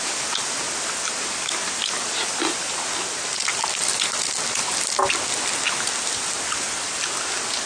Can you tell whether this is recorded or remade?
recorded